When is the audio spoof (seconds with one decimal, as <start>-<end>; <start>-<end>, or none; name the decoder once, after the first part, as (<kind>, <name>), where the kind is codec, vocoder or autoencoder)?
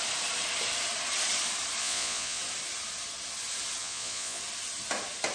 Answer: 1.8-2.4 (vocoder, Vocos); 3.8-4.4